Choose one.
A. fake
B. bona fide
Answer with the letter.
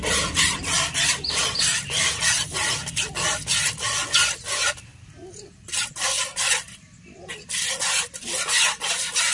B